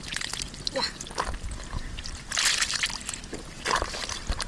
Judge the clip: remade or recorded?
recorded